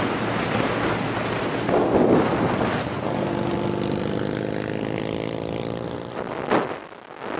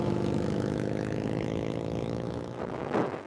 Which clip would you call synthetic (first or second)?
second